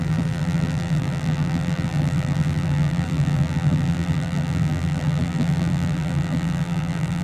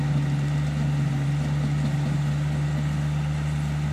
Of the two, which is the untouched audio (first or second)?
second